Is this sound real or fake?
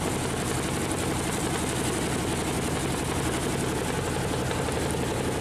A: real